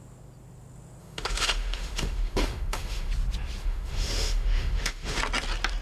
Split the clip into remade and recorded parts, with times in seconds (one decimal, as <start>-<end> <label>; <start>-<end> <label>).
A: 0.0-1.0 recorded; 1.0-3.1 remade; 3.1-3.6 recorded; 3.6-5.2 remade; 5.2-5.8 recorded